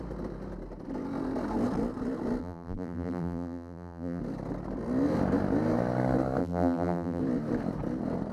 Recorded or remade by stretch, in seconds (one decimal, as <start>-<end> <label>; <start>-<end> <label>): 0.0-2.4 recorded; 2.4-4.2 remade; 4.2-6.4 recorded; 6.4-7.2 remade; 7.2-8.3 recorded

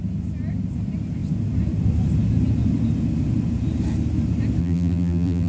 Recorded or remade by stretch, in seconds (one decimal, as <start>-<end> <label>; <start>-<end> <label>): 0.0-4.6 recorded; 4.6-5.5 remade

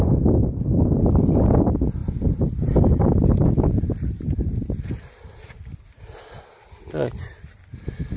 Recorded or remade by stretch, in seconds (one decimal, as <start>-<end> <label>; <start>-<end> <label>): 0.0-8.2 recorded

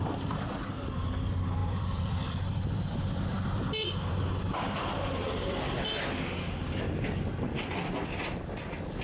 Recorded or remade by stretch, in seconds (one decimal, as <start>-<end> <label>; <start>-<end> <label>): 0.0-1.6 recorded; 1.6-5.8 remade; 5.8-9.0 recorded

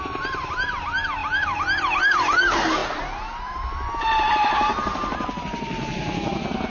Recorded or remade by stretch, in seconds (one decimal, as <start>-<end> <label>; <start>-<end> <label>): 0.0-1.2 recorded; 1.2-2.0 remade; 2.0-4.7 recorded; 4.7-5.4 remade; 5.4-6.7 recorded